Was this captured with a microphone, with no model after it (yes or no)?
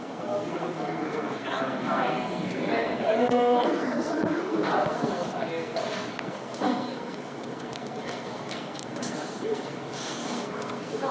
no